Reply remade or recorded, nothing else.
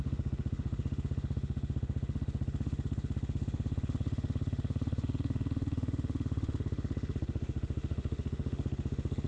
remade